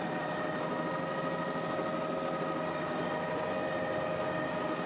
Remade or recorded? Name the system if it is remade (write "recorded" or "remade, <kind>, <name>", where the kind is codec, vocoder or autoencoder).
recorded